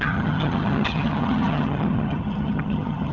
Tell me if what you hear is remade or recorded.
remade